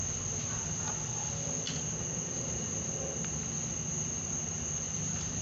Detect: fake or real real